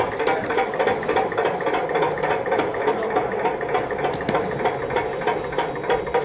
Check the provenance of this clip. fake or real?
real